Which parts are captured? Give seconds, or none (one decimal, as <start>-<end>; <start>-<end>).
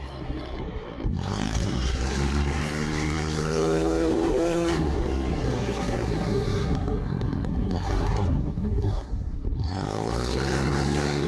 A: none